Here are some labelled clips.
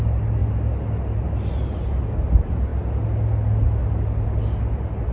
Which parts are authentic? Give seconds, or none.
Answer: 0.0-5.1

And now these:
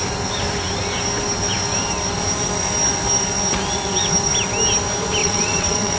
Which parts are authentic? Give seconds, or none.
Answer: 0.0-5.2

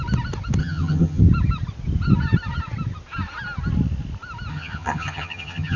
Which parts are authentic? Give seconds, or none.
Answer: 0.0-0.6; 1.2-4.5

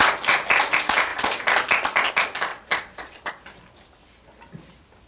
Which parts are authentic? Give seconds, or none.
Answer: 0.0-2.5; 3.3-5.1

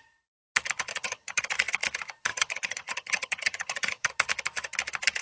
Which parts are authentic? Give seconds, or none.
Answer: 0.0-0.9; 1.4-2.3; 4.1-5.2

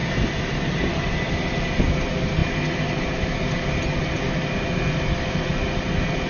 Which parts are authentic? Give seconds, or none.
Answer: 0.0-6.3